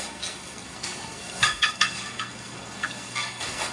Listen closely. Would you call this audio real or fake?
fake